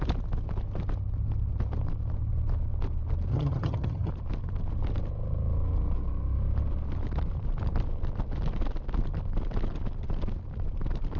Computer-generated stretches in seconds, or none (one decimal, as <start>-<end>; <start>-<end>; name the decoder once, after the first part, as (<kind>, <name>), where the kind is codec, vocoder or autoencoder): 3.3-4.1 (vocoder, HiFi-GAN)